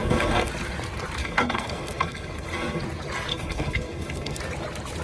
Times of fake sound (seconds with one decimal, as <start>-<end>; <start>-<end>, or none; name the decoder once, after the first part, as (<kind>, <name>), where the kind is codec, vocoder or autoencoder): 0.0-0.5 (codec, SNAC); 1.2-2.8; 3.3-4.4